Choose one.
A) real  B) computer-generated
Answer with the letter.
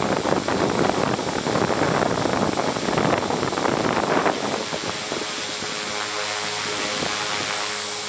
A